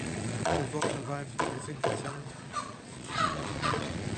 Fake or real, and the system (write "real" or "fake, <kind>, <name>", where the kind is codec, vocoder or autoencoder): fake, vocoder, Vocos